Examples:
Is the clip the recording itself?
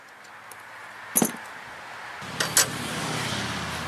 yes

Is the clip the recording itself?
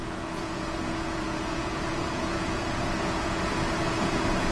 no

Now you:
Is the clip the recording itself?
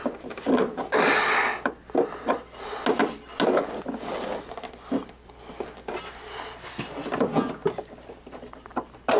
yes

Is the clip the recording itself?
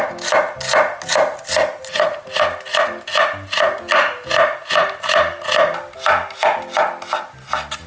yes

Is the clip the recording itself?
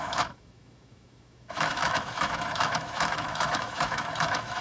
no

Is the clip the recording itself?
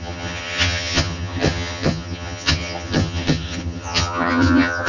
no